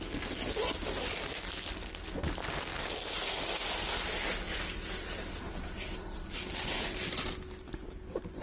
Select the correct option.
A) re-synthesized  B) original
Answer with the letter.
B